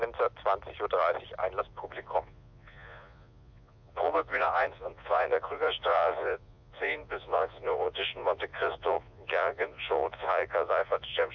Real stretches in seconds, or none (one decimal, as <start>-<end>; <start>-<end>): 0.0-1.6